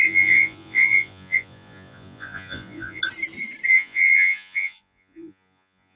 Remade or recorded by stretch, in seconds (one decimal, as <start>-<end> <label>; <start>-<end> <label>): 0.0-3.0 remade; 3.0-3.7 recorded; 3.7-6.0 remade